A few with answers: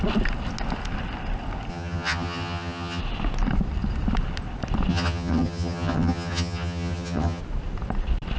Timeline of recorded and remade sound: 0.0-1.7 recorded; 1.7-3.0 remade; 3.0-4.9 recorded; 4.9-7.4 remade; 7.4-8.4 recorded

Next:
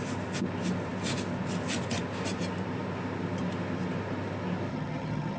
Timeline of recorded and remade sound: 0.0-4.7 recorded; 4.7-5.4 remade

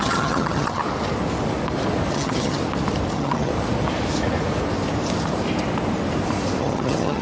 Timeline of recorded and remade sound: 0.0-0.8 remade; 0.8-2.1 recorded; 2.1-2.6 remade; 2.6-3.1 recorded; 3.1-3.5 remade; 3.5-6.6 recorded; 6.6-7.2 remade

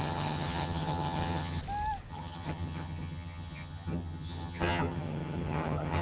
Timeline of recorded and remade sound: 0.0-1.6 remade; 1.6-2.1 recorded; 2.1-6.0 remade

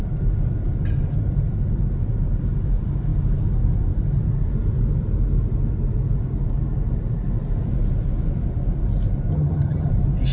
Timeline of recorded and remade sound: 0.0-9.3 recorded; 9.3-9.9 remade; 9.9-10.3 recorded